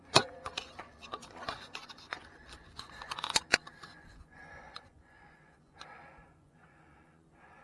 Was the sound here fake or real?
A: fake